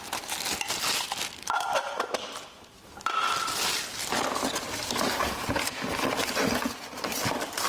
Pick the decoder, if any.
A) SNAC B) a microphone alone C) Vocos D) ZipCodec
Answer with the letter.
B